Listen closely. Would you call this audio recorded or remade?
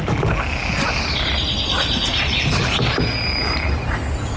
recorded